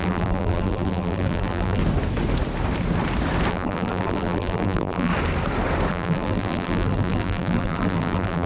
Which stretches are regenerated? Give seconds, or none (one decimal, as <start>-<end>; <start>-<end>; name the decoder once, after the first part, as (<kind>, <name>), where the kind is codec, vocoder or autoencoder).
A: 0.0-1.8 (vocoder, BigVGAN v2); 3.5-5.1; 5.9-8.5